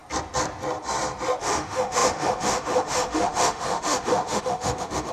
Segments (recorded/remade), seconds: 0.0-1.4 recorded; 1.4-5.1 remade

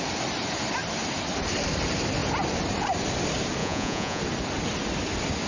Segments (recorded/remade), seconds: 0.0-3.6 recorded; 3.6-4.2 remade; 4.2-5.5 recorded

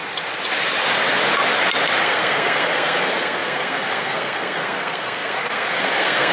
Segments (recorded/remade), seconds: 0.0-2.0 recorded; 2.0-6.3 remade

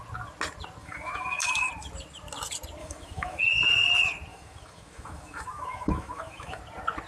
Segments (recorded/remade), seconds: 0.0-0.8 recorded; 0.8-1.7 remade; 1.7-2.8 recorded; 2.8-3.4 remade; 3.4-4.3 recorded; 4.3-6.6 remade; 6.6-7.1 recorded

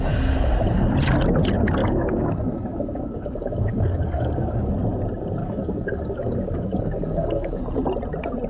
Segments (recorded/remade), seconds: 0.0-1.8 recorded; 1.8-4.7 remade; 4.7-5.4 recorded; 5.4-7.6 remade; 7.6-8.5 recorded

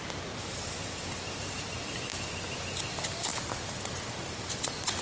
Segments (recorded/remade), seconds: 0.0-2.1 remade; 2.1-2.9 recorded; 2.9-3.3 remade; 3.3-4.3 recorded; 4.3-5.0 remade

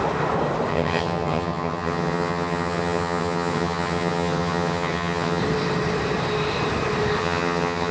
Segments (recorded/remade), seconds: 0.0-0.7 recorded; 0.7-5.4 remade; 5.4-7.2 recorded; 7.2-7.9 remade